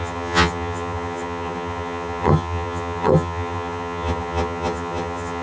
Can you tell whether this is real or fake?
fake